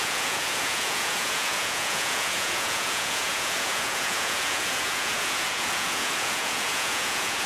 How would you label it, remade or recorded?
remade